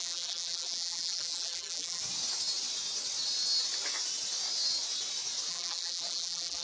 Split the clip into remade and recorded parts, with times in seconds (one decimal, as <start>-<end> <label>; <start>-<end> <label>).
0.0-2.0 remade; 2.0-5.5 recorded; 5.5-6.6 remade